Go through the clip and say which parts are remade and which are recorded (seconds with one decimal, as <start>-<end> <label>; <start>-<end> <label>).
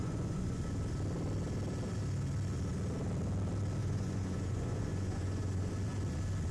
0.0-0.6 remade; 0.6-3.8 recorded; 3.8-5.7 remade; 5.7-6.5 recorded